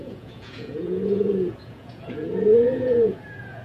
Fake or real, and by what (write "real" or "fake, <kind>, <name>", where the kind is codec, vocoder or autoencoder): fake, vocoder, Vocos